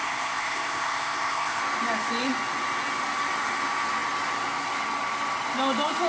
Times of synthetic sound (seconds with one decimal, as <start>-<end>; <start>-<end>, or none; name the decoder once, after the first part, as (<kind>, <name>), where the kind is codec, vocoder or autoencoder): 0.0-1.6 (codec, ZipCodec)